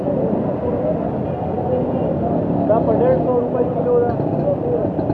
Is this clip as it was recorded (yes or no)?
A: yes